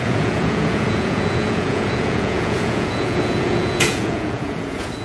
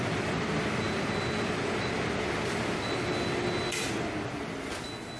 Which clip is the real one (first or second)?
second